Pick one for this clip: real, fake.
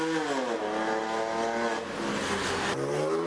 real